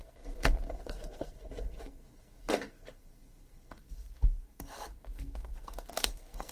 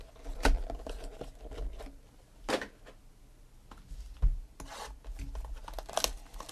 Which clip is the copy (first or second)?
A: first